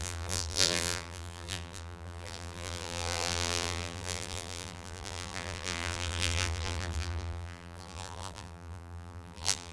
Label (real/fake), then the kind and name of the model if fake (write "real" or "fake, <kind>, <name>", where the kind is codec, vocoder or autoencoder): fake, vocoder, BigVGAN v2